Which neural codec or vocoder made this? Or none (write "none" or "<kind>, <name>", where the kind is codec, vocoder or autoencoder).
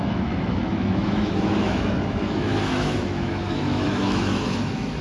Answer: autoencoder, DAC-VAE